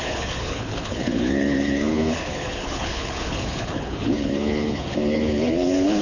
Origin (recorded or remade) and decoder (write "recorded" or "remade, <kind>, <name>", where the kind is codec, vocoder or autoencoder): remade, codec, HILCodec